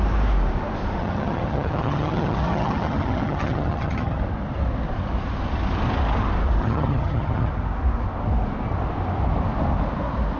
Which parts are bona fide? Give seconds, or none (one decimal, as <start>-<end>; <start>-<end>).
0.0-1.0; 4.2-6.6; 7.5-10.4